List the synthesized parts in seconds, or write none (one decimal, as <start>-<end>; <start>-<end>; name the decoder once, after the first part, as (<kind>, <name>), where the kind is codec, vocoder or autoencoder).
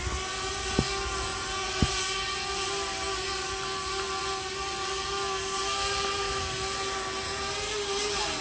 0.0-1.3 (vocoder, BigVGAN v2); 2.0-8.4